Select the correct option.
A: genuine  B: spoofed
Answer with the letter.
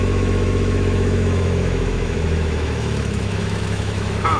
B